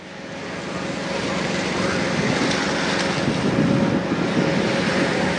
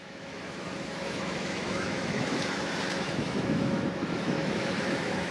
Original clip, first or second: first